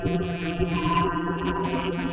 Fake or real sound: fake